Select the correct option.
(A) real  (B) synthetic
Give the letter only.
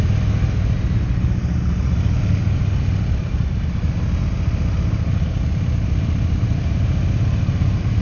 A